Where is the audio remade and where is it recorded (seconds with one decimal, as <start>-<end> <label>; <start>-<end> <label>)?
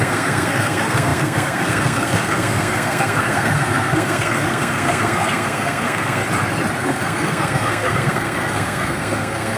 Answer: 0.0-6.2 remade; 6.2-6.8 recorded; 6.8-9.6 remade